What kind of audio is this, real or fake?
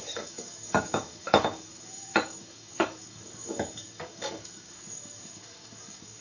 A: fake